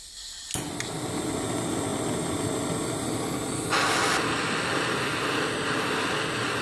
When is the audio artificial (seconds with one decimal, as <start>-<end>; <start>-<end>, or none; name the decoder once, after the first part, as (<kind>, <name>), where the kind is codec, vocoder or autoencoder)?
none